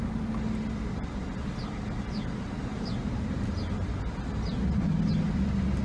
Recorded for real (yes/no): yes